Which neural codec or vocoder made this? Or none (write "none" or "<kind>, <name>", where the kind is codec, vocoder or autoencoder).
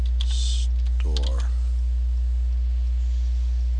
none